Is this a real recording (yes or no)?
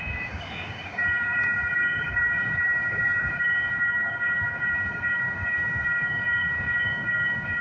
no